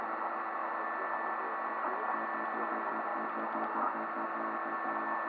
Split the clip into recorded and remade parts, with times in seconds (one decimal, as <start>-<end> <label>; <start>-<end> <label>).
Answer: 0.0-0.6 remade; 0.6-2.7 recorded; 2.7-3.1 remade; 3.1-5.3 recorded

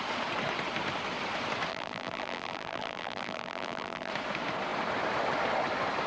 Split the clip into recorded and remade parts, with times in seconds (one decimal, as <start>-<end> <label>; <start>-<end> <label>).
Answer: 0.0-1.7 recorded; 1.7-4.1 remade; 4.1-6.1 recorded

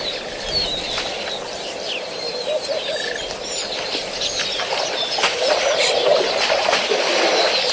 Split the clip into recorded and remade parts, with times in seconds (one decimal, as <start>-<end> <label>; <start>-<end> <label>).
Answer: 0.0-6.1 remade; 6.1-6.8 recorded; 6.8-7.7 remade